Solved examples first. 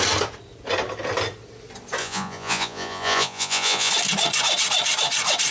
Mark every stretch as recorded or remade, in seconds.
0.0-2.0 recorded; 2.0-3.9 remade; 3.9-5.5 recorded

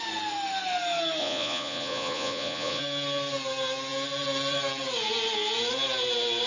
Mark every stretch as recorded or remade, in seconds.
0.0-1.2 recorded; 1.2-2.8 remade; 2.8-6.5 recorded

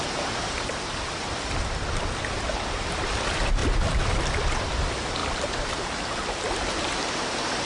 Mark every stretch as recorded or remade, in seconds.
0.0-5.2 recorded; 5.2-6.8 remade; 6.8-7.7 recorded

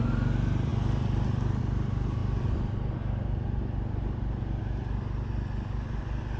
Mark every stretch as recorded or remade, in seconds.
0.0-6.4 recorded

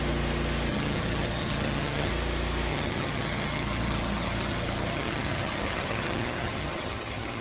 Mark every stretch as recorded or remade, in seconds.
0.0-0.7 recorded; 0.7-2.1 remade; 2.1-2.7 recorded; 2.7-7.4 remade